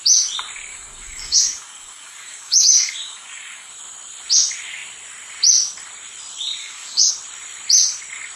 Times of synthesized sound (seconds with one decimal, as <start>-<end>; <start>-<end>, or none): 0.7-3.7; 6.6-7.1